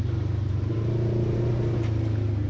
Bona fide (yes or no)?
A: yes